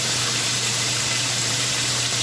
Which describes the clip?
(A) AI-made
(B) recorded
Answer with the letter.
A